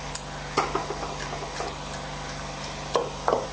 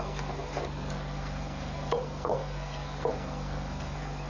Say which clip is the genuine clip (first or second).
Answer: first